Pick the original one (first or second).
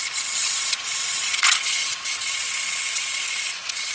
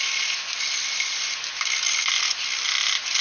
second